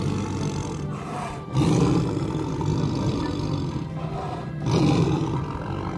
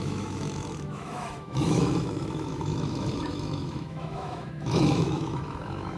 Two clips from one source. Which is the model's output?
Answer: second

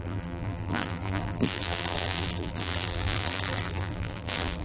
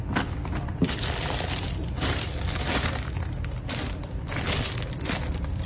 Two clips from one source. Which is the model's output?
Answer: first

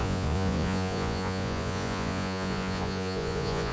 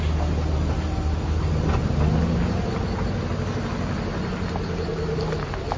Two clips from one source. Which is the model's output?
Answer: first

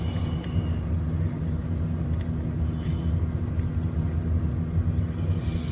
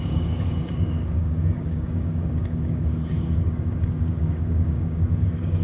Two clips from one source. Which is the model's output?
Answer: second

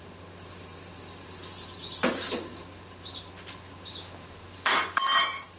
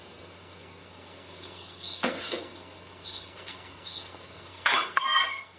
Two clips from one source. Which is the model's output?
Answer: second